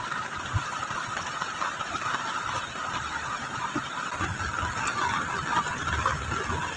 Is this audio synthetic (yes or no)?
no